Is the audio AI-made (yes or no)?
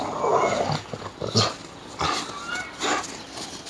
no